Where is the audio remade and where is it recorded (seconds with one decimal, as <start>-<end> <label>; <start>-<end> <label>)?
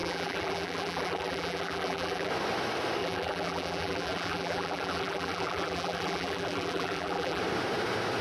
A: 0.0-2.3 remade; 2.3-3.0 recorded; 3.0-7.4 remade; 7.4-8.2 recorded